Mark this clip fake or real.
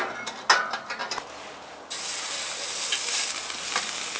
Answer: real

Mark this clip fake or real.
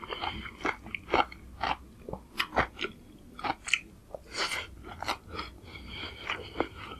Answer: real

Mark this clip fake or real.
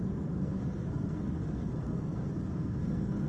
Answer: fake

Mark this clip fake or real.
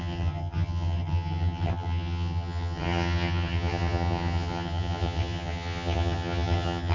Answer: fake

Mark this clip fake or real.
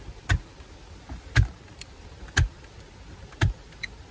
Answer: real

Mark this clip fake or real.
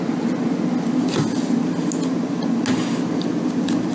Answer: real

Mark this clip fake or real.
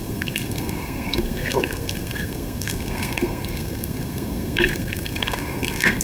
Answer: fake